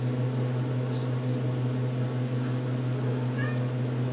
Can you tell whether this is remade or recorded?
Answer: recorded